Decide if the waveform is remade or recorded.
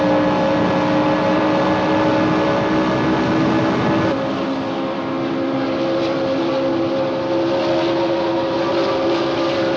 recorded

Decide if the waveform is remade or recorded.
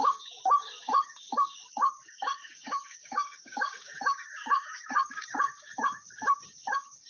remade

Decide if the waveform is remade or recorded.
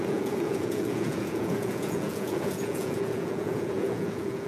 remade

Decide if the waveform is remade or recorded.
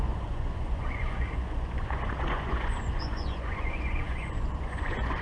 remade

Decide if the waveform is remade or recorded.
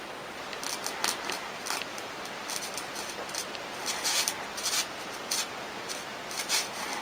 recorded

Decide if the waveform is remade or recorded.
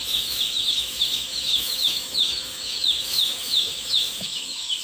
remade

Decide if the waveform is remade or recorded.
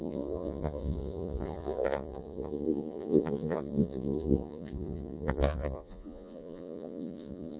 remade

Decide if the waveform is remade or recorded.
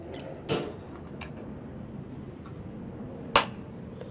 recorded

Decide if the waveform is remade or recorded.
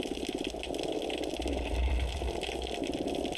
recorded